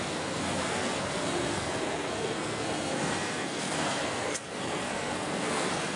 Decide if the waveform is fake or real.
fake